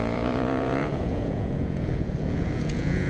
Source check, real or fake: fake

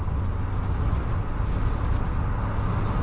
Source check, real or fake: real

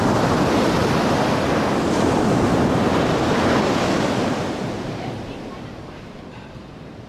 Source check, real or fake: real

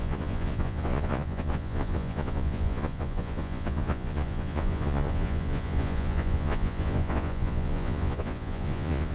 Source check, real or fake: fake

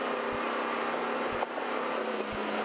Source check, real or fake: real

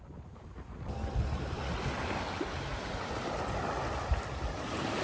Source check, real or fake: real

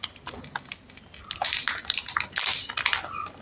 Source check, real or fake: real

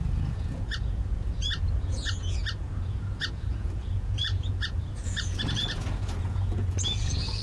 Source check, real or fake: fake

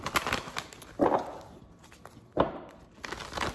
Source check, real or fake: real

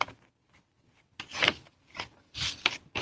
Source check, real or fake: real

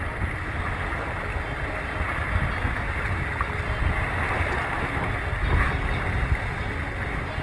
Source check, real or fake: real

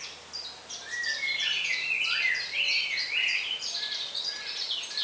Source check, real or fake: real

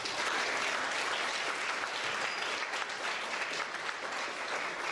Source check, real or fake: real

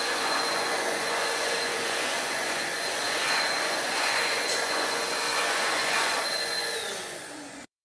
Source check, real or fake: fake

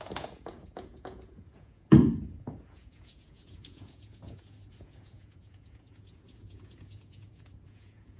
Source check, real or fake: fake